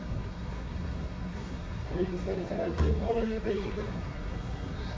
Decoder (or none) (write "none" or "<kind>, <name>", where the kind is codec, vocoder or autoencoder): codec, SNAC